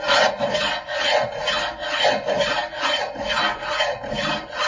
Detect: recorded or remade recorded